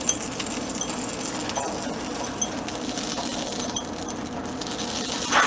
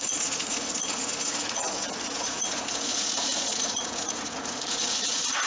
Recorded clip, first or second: first